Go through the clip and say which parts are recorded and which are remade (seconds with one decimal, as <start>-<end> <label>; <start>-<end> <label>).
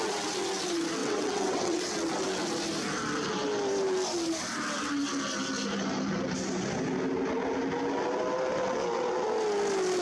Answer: 0.0-1.0 recorded; 1.0-1.8 remade; 1.8-10.0 recorded